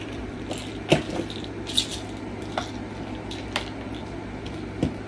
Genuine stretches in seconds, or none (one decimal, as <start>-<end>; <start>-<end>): 0.0-5.1